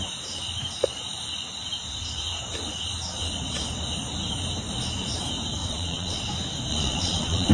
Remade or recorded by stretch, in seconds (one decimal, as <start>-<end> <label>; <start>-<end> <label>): 0.0-5.6 recorded; 5.6-6.2 remade; 6.2-6.7 recorded; 6.7-7.5 remade